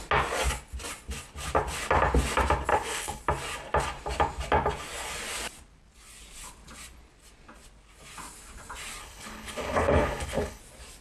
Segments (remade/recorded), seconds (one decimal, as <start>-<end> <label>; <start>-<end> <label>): 0.0-2.7 recorded; 2.7-3.2 remade; 3.2-9.0 recorded; 9.0-10.6 remade; 10.6-11.0 recorded